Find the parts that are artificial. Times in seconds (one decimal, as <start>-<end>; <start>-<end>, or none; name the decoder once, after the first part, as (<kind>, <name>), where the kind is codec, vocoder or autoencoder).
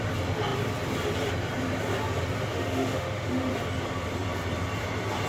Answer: 2.5-3.5 (autoencoder, DAC-VAE)